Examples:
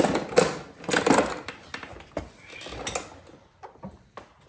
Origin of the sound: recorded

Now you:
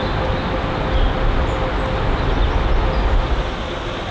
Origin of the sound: recorded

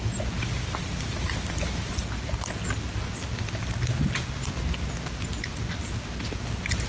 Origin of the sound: recorded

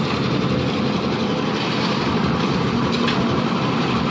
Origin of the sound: recorded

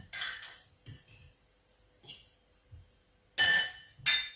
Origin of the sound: recorded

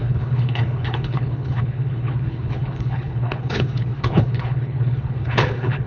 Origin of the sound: remade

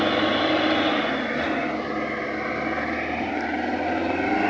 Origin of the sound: recorded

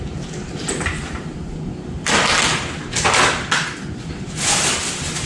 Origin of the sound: recorded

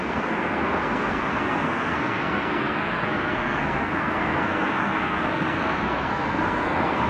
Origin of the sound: remade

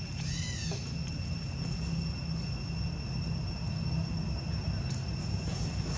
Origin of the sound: recorded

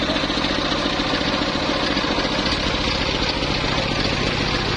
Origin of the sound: recorded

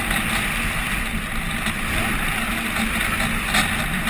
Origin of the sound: recorded